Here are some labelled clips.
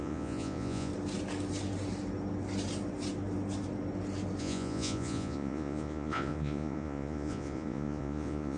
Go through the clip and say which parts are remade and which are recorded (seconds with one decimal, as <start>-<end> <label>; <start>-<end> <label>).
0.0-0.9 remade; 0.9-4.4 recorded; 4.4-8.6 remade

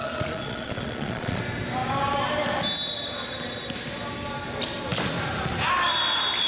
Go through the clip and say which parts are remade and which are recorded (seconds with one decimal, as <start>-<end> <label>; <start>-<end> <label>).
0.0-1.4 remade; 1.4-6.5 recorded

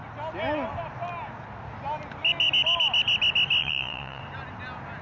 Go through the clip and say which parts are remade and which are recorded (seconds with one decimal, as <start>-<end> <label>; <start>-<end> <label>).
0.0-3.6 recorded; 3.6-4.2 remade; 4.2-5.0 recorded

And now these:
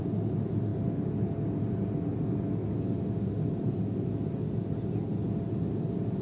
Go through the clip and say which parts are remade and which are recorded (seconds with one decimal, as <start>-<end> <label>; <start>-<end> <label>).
0.0-6.2 recorded

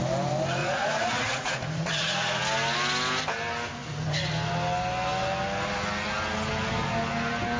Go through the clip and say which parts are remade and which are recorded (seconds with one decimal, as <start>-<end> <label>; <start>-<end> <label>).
0.0-0.6 recorded; 0.6-2.4 remade; 2.4-7.6 recorded

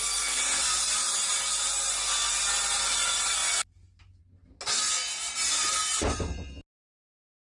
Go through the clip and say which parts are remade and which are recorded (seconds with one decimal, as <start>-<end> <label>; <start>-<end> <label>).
0.0-7.4 recorded